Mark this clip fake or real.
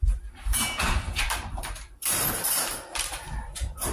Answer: fake